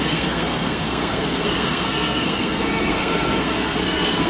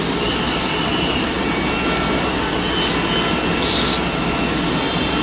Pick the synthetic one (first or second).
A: first